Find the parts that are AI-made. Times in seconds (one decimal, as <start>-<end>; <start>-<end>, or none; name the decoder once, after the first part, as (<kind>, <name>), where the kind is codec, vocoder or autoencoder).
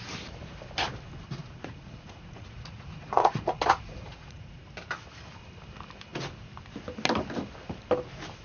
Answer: 1.4-4.6 (vocoder, Vocos)